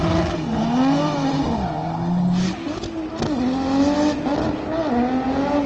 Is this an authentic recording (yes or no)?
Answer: yes